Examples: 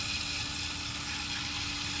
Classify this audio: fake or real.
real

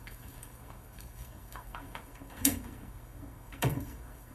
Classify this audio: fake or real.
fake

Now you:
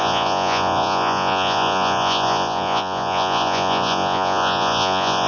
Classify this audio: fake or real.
fake